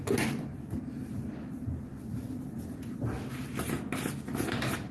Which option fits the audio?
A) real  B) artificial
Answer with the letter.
A